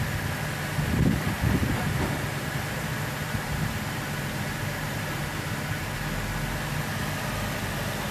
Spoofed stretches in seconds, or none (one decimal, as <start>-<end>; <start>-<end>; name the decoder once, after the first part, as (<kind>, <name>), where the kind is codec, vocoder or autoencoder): 1.6-6.0 (vocoder, BigVGAN v2)